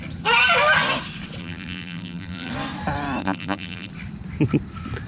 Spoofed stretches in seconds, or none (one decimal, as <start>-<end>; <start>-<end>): 1.4-2.5; 3.2-3.9